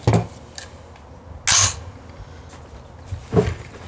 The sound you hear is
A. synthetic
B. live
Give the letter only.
B